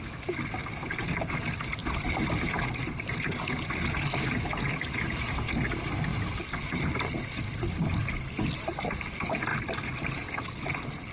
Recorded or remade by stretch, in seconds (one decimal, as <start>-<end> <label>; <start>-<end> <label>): 0.0-11.1 recorded